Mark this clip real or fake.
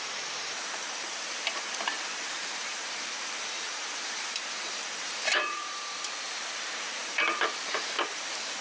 fake